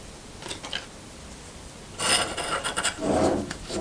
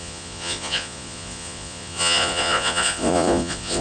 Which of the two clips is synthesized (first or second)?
second